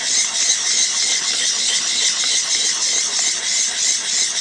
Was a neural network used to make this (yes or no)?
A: no